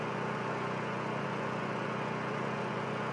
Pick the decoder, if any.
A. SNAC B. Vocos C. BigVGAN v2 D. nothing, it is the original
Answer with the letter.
B